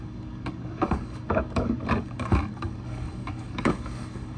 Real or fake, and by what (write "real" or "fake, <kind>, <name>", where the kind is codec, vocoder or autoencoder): fake, codec, DAC